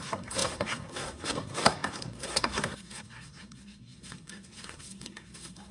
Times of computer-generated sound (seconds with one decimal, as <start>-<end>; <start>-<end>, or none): 0.0-5.7